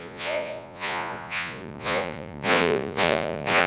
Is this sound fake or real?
fake